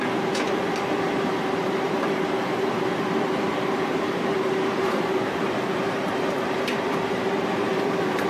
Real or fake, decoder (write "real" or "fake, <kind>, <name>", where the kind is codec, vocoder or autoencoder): fake, vocoder, BigVGAN v2